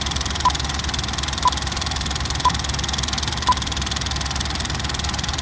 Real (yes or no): yes